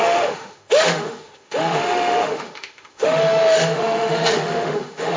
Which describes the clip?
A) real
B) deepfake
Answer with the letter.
B